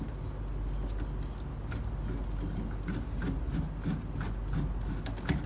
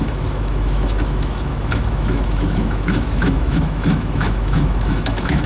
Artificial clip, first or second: second